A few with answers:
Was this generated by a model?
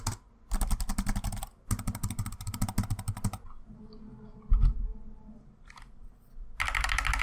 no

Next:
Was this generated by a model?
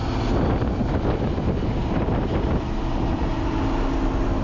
no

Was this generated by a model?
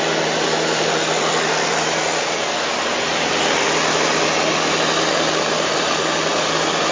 no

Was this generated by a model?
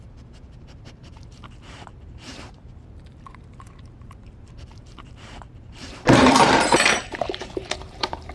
yes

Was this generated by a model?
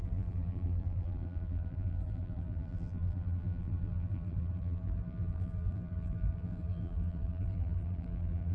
yes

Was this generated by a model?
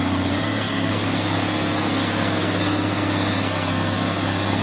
yes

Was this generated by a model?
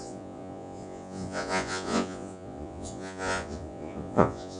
yes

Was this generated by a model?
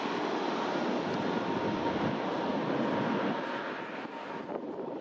no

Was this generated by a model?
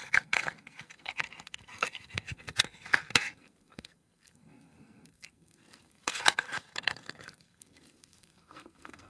yes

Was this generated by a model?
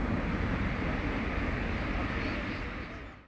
no